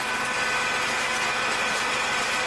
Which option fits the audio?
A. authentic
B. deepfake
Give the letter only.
A